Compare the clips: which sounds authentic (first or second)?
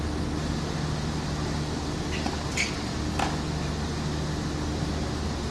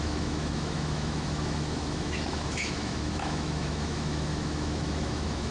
first